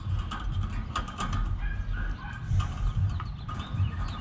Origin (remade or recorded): recorded